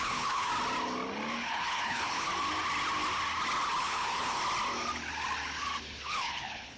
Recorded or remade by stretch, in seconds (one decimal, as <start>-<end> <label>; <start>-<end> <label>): 0.0-0.5 remade; 0.5-1.5 recorded; 1.5-2.3 remade; 2.3-3.8 recorded; 3.8-4.4 remade; 4.4-5.8 recorded; 5.8-6.8 remade